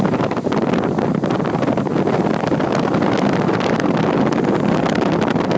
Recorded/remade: recorded